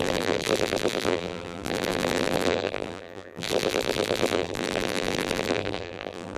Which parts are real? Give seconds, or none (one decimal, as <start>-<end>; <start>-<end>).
none